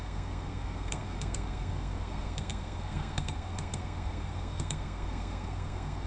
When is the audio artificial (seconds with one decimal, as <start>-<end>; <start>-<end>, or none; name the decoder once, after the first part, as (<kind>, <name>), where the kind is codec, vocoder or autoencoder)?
0.0-6.1 (codec, SNAC)